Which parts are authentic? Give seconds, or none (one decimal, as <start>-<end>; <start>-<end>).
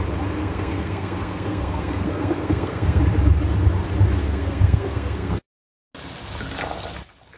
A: 0.0-0.4; 3.0-4.2; 5.4-7.4